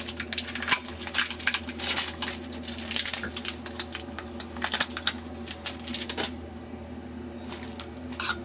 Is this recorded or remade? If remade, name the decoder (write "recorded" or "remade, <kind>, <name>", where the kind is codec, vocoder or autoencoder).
recorded